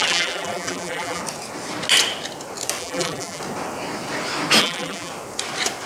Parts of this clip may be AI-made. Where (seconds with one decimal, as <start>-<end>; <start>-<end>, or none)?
0.0-1.2; 2.8-3.4; 4.6-5.1